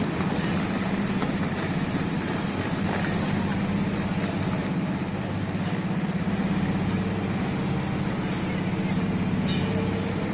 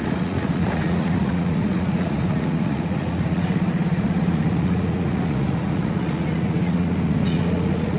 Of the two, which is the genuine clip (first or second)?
first